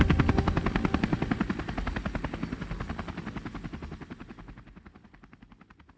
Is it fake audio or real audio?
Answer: real